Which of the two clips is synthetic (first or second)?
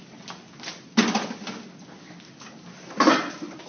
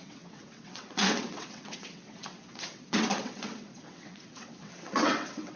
second